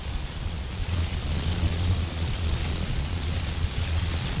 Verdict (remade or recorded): remade